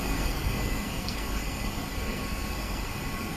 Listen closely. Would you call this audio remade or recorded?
remade